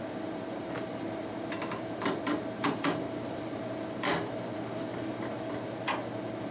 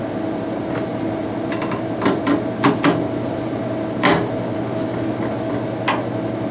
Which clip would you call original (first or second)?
second